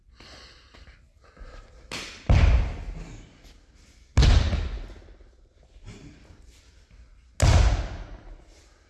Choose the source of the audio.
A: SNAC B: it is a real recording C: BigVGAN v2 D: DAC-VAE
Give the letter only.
B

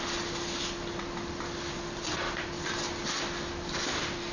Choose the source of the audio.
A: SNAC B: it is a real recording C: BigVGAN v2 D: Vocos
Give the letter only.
B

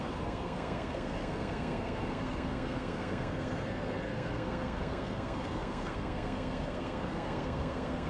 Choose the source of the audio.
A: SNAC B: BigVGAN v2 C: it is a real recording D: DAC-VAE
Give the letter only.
A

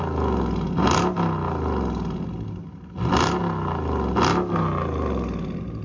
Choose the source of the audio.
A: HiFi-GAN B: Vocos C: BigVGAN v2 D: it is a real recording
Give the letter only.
D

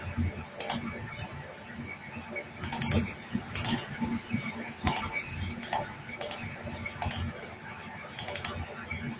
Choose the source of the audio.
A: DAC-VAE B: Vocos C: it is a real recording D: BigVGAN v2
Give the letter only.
C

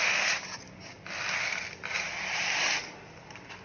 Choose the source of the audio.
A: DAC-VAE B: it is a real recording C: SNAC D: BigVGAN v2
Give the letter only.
B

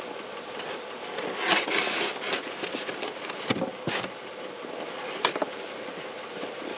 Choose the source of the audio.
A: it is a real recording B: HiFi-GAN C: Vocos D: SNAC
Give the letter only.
A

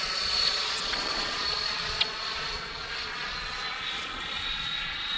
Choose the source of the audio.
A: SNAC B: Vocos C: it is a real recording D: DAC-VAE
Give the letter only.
B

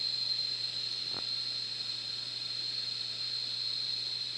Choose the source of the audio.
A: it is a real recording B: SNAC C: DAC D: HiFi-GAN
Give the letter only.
A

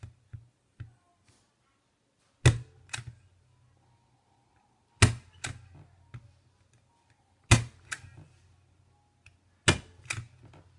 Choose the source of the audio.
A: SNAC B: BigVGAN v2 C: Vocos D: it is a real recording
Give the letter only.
D